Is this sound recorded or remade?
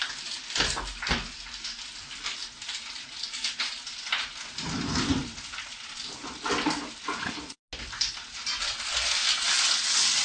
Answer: recorded